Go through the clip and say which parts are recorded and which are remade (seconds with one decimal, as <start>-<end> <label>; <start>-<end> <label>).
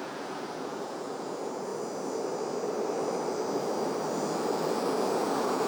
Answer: 0.0-1.7 remade; 1.7-5.1 recorded; 5.1-5.7 remade